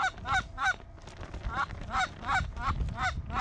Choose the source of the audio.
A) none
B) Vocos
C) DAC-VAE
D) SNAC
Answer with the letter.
A